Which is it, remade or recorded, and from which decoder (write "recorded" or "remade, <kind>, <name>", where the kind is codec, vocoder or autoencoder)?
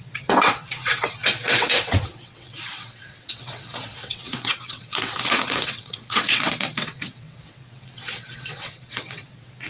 remade, vocoder, WaveNeXt